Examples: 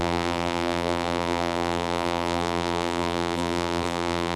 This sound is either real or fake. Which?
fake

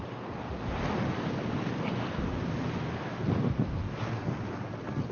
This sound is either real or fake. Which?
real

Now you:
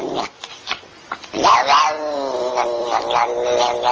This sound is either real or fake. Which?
real